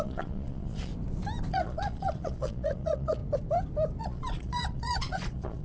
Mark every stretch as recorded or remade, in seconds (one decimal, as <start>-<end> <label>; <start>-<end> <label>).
0.0-0.9 remade; 0.9-1.5 recorded; 1.5-3.2 remade; 3.2-4.0 recorded; 4.0-5.6 remade